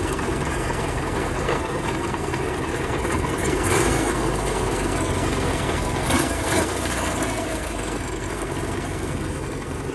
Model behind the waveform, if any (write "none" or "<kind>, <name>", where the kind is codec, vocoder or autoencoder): codec, SNAC